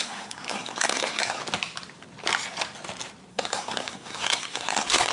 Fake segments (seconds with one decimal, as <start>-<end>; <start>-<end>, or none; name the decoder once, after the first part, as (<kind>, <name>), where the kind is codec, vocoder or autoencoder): 0.0-1.4 (codec, SNAC); 3.3-5.1

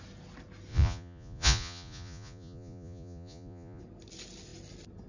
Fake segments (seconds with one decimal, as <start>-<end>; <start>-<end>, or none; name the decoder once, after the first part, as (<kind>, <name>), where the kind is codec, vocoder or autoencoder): 0.7-3.8 (vocoder, Vocos)

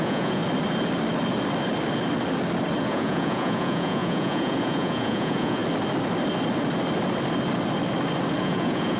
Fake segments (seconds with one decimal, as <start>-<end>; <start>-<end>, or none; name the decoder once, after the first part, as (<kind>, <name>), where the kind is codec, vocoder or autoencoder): 0.0-0.4 (vocoder, Vocos); 2.8-5.6; 8.4-9.0

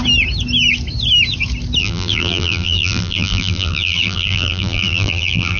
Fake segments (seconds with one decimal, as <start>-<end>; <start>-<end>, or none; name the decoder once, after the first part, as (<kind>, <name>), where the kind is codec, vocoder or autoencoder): 1.8-5.6 (vocoder, BigVGAN v2)

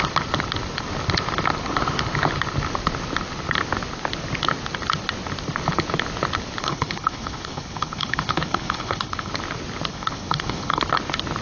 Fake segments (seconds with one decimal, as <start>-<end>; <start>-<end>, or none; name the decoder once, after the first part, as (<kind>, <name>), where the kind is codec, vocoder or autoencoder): 6.6-9.3 (codec, HILCodec); 9.9-10.8

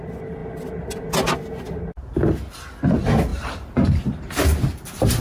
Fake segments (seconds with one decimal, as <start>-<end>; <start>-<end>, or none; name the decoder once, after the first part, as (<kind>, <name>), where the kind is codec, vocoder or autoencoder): 3.3-4.2 (vocoder, BigVGAN v2)

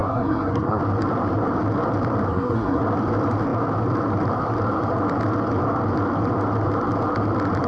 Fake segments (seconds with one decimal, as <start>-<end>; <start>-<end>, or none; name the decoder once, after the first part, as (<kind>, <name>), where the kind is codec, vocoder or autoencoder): 0.0-0.8 (codec, SNAC); 2.3-2.8